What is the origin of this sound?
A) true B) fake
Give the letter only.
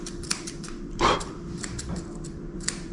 B